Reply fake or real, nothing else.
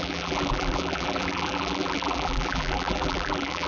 fake